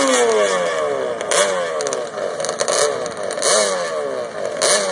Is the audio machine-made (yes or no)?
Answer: no